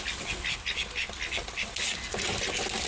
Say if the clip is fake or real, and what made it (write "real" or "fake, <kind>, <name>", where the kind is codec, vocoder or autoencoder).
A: real